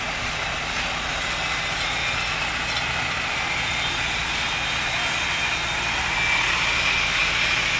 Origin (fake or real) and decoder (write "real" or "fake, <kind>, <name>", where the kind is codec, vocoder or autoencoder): real